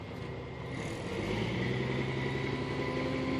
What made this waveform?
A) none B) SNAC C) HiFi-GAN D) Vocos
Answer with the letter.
A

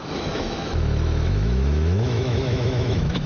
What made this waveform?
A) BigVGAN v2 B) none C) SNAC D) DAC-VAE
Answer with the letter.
D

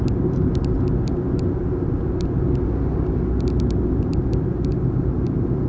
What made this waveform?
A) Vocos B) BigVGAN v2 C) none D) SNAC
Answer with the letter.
C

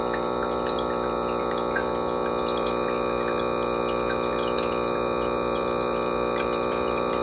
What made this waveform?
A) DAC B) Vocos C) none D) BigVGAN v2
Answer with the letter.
B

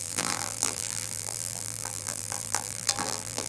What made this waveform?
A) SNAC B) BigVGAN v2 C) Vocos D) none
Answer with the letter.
B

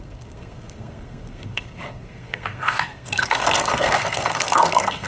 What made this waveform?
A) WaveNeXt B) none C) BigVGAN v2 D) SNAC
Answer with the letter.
D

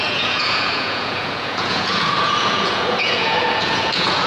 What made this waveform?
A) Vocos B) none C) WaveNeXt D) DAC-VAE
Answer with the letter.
A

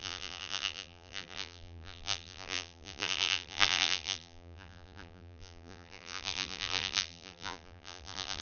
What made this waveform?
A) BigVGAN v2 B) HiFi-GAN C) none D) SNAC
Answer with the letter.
A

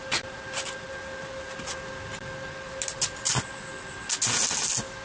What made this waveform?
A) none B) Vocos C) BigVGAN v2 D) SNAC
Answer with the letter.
A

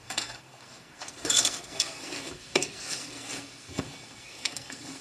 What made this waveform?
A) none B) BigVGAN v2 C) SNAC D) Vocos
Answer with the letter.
C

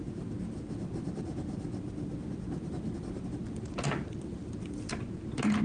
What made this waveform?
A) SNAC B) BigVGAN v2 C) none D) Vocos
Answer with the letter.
C